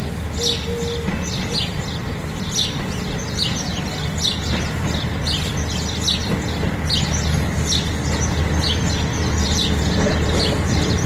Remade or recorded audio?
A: recorded